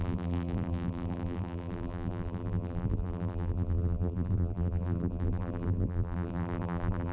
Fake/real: fake